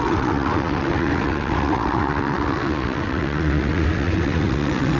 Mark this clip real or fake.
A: fake